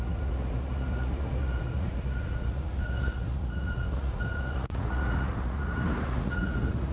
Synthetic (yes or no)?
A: yes